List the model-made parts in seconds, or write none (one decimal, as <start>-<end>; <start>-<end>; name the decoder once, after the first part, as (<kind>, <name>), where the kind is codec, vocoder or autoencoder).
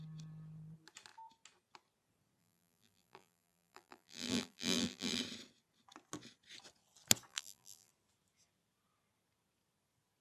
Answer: 2.4-5.2 (vocoder, BigVGAN v2); 7.3-7.9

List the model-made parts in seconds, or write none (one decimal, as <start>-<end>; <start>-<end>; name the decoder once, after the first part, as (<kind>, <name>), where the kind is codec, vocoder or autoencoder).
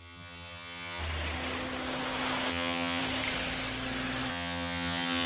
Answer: 0.0-1.0 (vocoder, HiFi-GAN); 2.5-3.0; 4.3-5.3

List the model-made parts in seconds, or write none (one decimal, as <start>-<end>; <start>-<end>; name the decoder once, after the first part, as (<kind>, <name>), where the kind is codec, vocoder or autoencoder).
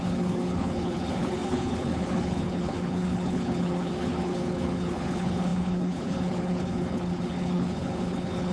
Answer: 0.0-8.5 (codec, HILCodec)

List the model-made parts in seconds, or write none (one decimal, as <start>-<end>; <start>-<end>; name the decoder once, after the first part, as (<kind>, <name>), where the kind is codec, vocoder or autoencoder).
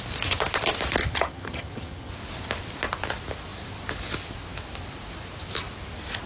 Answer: 1.0-2.1 (vocoder, HiFi-GAN)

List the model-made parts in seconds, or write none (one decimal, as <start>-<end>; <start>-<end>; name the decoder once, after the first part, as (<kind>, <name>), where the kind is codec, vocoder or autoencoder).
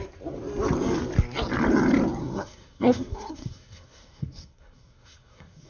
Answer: 2.2-5.7 (codec, SNAC)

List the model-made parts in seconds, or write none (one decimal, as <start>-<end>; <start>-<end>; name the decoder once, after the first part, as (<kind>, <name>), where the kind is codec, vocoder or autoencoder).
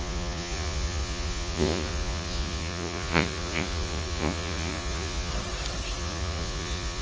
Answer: 0.0-5.3 (vocoder, Vocos); 6.0-7.0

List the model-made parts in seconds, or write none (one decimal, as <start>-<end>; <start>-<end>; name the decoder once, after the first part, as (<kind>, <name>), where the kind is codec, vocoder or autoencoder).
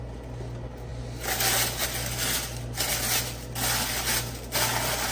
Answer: none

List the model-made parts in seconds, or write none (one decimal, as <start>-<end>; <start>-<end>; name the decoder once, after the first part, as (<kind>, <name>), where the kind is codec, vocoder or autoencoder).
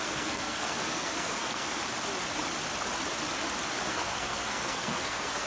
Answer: 0.0-1.8 (codec, SNAC); 3.8-5.5